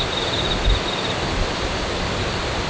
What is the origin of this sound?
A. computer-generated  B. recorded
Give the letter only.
B